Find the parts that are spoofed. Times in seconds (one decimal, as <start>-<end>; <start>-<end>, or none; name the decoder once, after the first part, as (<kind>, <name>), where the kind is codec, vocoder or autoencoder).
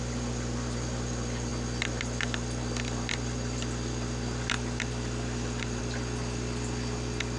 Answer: none